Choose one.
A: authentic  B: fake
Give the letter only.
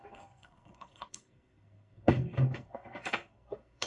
B